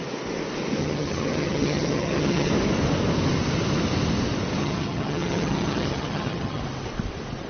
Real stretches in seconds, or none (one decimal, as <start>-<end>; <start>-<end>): 0.0-0.8; 2.5-4.6; 6.6-7.5